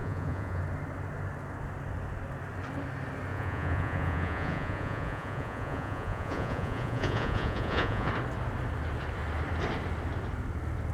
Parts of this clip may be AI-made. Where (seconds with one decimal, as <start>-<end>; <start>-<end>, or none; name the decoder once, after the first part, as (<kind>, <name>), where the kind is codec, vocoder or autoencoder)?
0.0-0.6 (vocoder, Vocos); 3.3-8.1